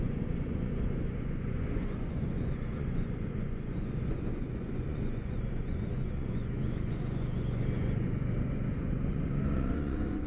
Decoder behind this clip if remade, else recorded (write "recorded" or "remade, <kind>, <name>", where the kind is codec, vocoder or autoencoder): remade, vocoder, Vocos